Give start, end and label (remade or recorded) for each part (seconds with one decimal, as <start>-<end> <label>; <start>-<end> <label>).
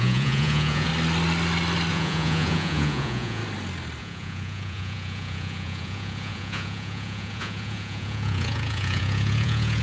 0.0-0.9 remade; 0.9-1.9 recorded; 1.9-3.4 remade; 3.4-4.0 recorded; 4.0-9.8 remade